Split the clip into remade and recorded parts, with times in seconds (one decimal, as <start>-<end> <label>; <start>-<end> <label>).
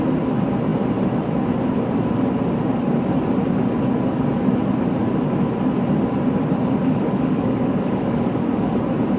0.0-6.8 recorded; 6.8-8.7 remade; 8.7-9.2 recorded